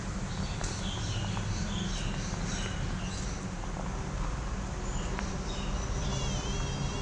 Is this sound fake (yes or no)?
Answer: no